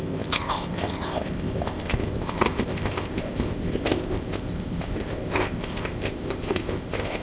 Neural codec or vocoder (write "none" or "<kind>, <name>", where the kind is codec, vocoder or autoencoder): codec, ZipCodec